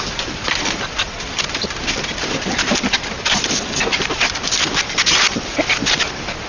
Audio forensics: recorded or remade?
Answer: remade